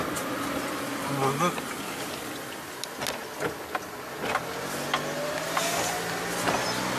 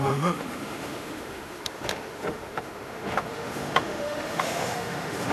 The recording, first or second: first